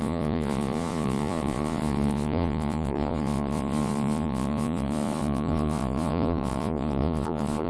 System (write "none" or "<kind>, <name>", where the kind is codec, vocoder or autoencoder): vocoder, Vocos